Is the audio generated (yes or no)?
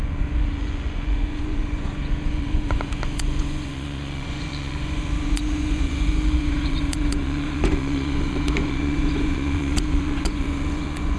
yes